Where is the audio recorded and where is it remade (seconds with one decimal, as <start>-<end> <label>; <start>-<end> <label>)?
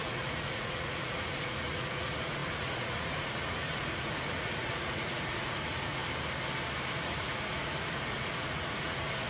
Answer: 0.0-6.0 remade; 6.0-7.0 recorded; 7.0-9.3 remade